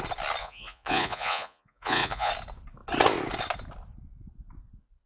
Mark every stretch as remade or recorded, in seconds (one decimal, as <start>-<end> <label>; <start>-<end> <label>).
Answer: 0.0-0.4 recorded; 0.4-2.3 remade; 2.3-5.1 recorded